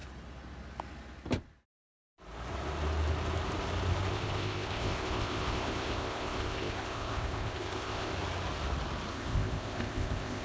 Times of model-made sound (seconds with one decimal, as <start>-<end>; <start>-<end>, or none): 4.1-8.1; 9.1-10.4